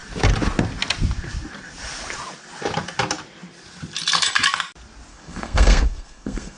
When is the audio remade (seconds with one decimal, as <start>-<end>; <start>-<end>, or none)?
5.1-6.6